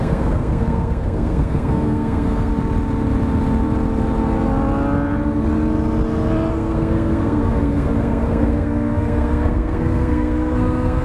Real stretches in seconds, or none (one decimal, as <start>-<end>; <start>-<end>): 2.5-6.5